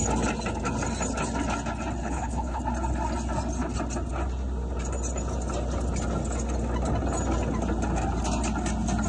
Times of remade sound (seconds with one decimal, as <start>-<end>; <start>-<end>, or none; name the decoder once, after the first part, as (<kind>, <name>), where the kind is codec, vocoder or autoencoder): 2.0-2.6 (codec, HILCodec)